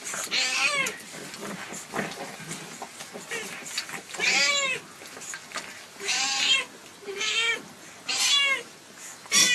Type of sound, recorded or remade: recorded